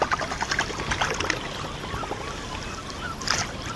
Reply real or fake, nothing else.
real